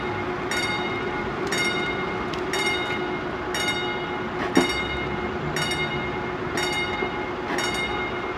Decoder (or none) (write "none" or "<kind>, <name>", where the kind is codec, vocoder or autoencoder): none